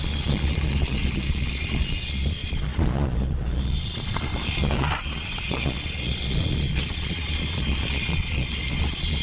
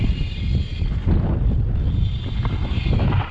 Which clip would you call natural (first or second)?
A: second